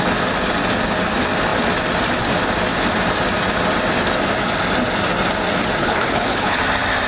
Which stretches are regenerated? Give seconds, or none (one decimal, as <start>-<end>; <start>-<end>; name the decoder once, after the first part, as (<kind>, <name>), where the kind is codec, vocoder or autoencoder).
5.8-6.6 (codec, HILCodec)